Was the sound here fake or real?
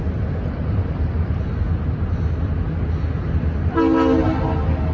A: real